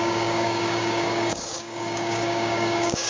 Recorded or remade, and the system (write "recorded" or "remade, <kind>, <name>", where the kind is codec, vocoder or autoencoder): remade, codec, DAC